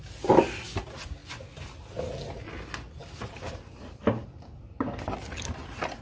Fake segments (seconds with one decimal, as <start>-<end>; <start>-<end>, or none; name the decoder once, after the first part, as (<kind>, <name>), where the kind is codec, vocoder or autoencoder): none